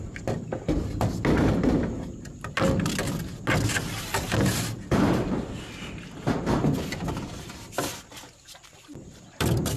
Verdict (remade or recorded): recorded